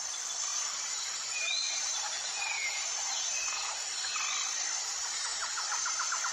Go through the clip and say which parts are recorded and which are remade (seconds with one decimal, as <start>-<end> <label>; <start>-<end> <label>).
0.0-0.5 recorded; 0.5-3.9 remade; 3.9-5.3 recorded; 5.3-6.3 remade